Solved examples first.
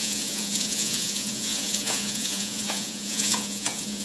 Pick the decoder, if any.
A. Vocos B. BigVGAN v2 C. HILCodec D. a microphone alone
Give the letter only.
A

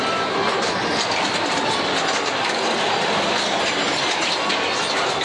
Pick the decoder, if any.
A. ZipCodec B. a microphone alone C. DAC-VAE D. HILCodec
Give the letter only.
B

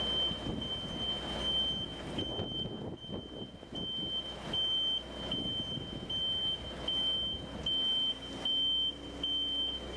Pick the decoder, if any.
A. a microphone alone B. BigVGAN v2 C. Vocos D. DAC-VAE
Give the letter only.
A